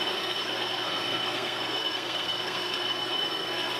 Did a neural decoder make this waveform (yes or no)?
yes